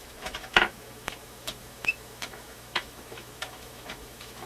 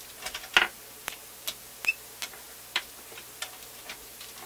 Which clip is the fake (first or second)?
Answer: first